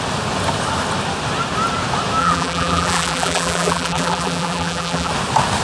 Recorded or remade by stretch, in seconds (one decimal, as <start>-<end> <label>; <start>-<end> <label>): 0.0-2.2 recorded; 2.2-5.1 remade; 5.1-5.6 recorded